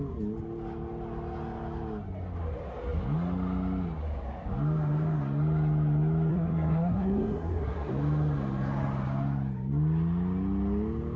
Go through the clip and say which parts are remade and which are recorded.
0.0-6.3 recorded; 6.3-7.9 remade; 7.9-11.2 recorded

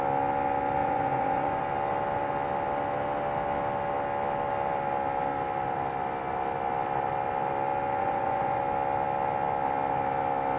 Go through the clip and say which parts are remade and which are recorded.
0.0-0.8 recorded; 0.8-1.6 remade; 1.6-8.0 recorded; 8.0-8.6 remade; 8.6-10.6 recorded

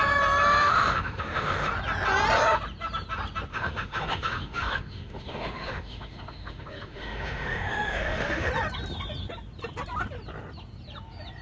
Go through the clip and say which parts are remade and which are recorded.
0.0-0.6 recorded; 0.6-1.7 remade; 1.7-3.5 recorded; 3.5-8.5 remade; 8.5-11.4 recorded

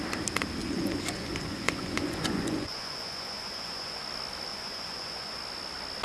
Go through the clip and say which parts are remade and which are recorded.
0.0-0.6 recorded; 0.6-4.0 remade; 4.0-4.5 recorded; 4.5-5.4 remade; 5.4-6.0 recorded

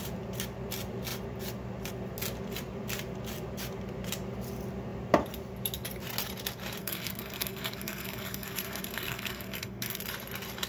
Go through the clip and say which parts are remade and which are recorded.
0.0-6.8 recorded; 6.8-10.0 remade; 10.0-10.7 recorded

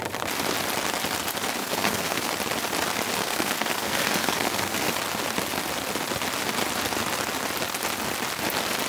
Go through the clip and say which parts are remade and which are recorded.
0.0-1.6 recorded; 1.6-2.3 remade; 2.3-3.2 recorded; 3.2-4.9 remade; 4.9-8.9 recorded

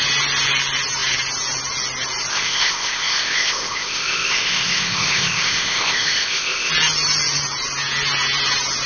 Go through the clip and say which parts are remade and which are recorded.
0.0-2.3 recorded; 2.3-6.7 remade; 6.7-8.9 recorded